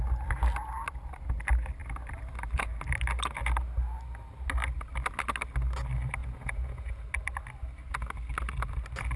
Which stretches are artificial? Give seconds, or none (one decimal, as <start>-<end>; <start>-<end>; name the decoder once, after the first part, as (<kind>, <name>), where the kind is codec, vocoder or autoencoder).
6.2-7.0 (vocoder, Vocos)